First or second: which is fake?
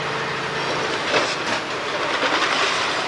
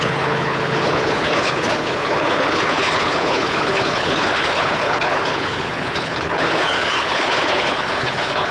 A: second